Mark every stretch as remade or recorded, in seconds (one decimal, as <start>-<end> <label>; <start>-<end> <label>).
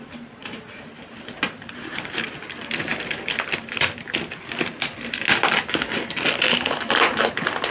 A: 0.0-0.4 recorded; 0.4-2.3 remade; 2.3-7.7 recorded